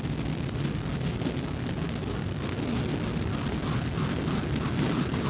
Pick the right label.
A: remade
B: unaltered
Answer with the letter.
B